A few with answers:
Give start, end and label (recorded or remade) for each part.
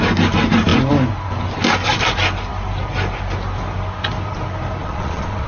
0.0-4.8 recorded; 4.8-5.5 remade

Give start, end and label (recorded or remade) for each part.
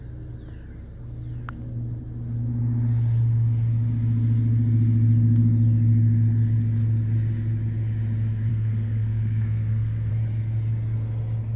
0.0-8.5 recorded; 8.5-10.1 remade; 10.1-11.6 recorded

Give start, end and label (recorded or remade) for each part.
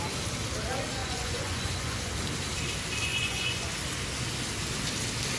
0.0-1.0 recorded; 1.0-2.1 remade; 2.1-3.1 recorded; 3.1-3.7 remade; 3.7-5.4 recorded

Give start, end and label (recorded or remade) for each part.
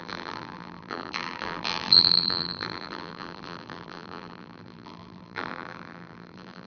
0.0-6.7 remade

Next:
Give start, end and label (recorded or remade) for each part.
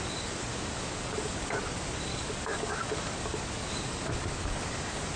0.0-0.5 recorded; 0.5-1.6 remade; 1.6-2.1 recorded; 2.1-5.2 remade